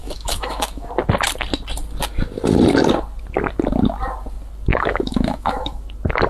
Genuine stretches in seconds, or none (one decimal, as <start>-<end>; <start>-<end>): 0.9-4.7; 5.8-6.3